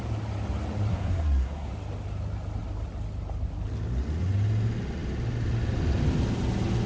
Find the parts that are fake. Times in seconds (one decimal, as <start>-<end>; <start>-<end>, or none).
0.9-1.7